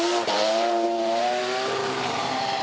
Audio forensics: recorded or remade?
remade